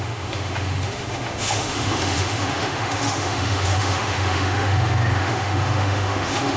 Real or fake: fake